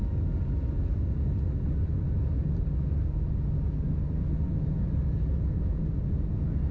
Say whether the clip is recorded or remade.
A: recorded